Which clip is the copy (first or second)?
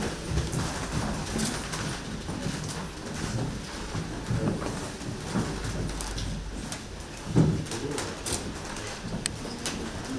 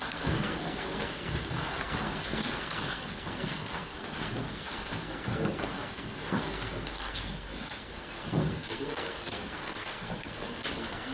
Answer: second